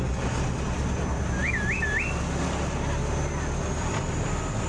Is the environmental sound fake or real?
real